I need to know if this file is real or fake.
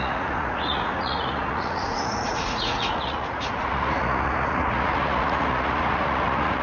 fake